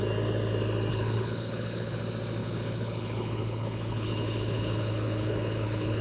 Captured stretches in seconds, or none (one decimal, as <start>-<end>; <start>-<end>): 0.0-0.9; 2.0-2.4